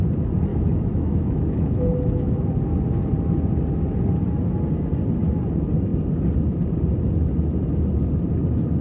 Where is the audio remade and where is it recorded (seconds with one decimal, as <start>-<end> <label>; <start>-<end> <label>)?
0.0-0.5 recorded; 0.5-2.6 remade; 2.6-8.8 recorded